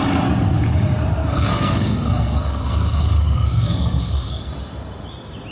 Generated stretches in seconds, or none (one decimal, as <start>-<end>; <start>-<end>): 1.2-4.5